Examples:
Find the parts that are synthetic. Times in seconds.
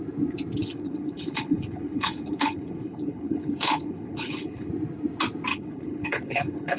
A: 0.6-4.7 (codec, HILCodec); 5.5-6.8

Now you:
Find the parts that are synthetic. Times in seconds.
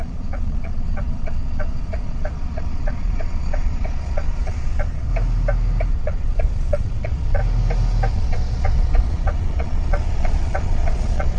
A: 0.0-5.1 (vocoder, Vocos); 5.9-7.4; 8.1-11.4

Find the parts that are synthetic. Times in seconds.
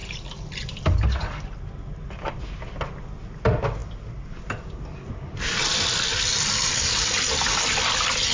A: none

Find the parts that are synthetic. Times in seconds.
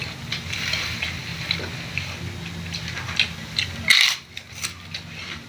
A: none